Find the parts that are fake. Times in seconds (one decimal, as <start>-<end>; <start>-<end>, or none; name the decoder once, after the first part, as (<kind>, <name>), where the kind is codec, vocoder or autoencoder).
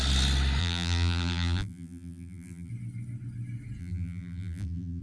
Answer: 0.6-2.7 (vocoder, BigVGAN v2); 3.8-5.0